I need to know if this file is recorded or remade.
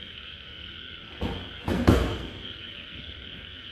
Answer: remade